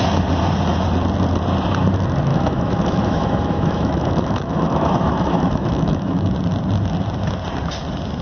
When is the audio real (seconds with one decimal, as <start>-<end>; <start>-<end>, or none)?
0.0-2.3; 6.3-8.2